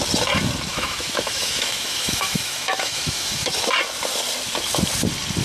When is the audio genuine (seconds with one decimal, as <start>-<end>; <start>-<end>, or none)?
0.0-0.7; 3.5-5.4